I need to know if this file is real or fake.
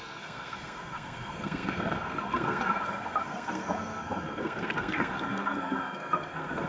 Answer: fake